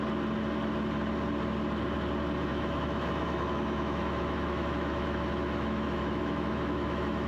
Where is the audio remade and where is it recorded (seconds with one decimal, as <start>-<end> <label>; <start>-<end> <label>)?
0.0-2.5 recorded; 2.5-7.3 remade